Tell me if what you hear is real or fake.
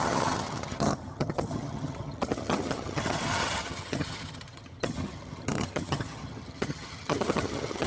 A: fake